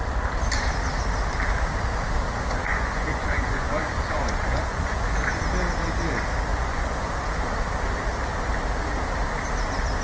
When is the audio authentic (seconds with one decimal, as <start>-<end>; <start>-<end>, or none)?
0.0-2.7; 5.4-6.5; 7.1-10.0